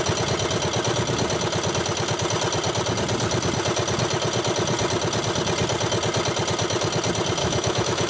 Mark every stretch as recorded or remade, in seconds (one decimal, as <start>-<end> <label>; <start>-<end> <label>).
0.0-7.4 recorded; 7.4-8.1 remade